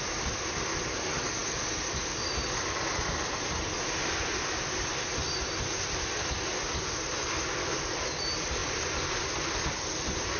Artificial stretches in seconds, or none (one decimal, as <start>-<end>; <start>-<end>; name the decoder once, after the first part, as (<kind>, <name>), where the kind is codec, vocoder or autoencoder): 8.6-9.3 (vocoder, BigVGAN v2)